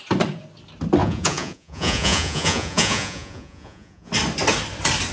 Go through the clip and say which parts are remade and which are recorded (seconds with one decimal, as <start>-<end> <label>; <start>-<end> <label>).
0.0-1.0 recorded; 1.0-4.1 remade; 4.1-5.1 recorded